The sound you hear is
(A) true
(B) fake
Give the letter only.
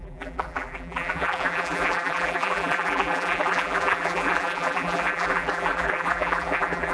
B